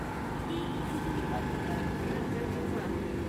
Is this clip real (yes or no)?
yes